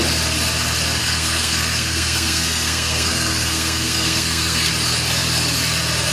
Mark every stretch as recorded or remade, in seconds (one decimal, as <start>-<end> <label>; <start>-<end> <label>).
0.0-1.0 recorded; 1.0-4.7 remade; 4.7-6.1 recorded